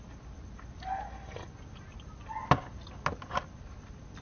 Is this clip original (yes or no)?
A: yes